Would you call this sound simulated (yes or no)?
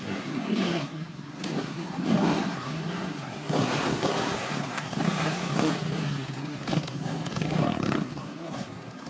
yes